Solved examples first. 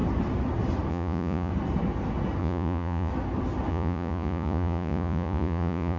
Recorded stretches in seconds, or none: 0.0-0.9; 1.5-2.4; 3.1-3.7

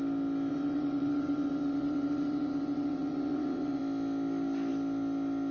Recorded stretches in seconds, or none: 0.0-0.5; 3.8-5.5

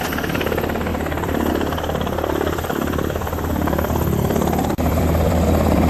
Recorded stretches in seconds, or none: none